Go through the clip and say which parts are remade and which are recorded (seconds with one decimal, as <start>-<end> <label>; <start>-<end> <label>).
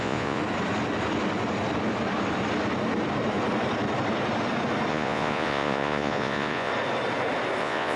0.0-0.4 remade; 0.4-4.9 recorded; 4.9-6.7 remade; 6.7-7.6 recorded; 7.6-8.0 remade